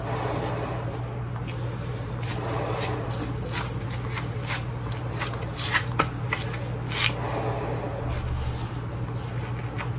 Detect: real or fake real